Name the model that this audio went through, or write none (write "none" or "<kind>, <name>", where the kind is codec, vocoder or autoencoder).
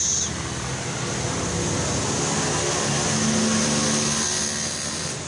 none